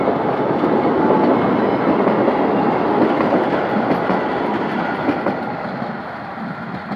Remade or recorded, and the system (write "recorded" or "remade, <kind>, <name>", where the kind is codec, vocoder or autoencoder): recorded